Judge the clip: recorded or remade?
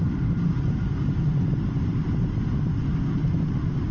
recorded